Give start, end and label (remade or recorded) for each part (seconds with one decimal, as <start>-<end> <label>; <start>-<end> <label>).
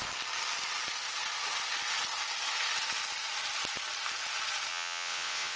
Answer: 0.0-4.7 recorded; 4.7-5.6 remade